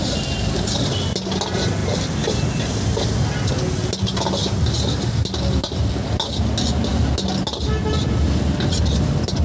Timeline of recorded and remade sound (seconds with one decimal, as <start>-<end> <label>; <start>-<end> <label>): 0.0-9.4 recorded